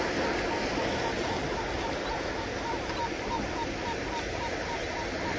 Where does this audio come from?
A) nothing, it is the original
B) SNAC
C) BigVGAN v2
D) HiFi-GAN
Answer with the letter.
A